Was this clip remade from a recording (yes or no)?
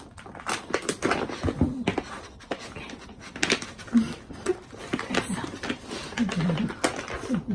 no